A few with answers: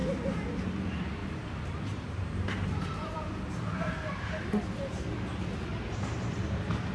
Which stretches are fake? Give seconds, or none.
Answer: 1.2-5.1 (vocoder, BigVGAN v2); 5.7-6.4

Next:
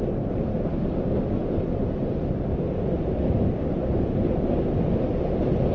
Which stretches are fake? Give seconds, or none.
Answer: none

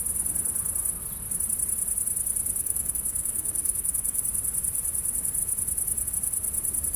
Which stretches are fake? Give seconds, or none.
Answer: 2.6-4.2 (codec, SNAC)

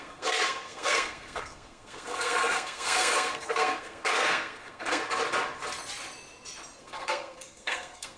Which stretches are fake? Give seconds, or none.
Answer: 0.0-5.0 (codec, SNAC); 6.8-8.2

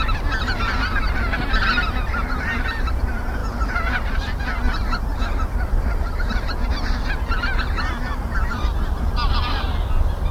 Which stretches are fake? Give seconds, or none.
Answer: none

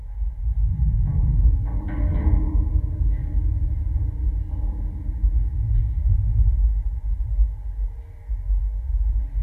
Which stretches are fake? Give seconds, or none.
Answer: 1.1-2.2 (codec, DAC); 2.7-3.7